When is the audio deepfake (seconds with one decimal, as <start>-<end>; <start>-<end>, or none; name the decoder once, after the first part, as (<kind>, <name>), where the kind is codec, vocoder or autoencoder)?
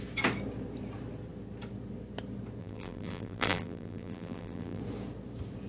2.6-4.8 (vocoder, BigVGAN v2)